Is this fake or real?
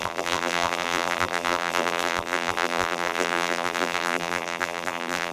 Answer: fake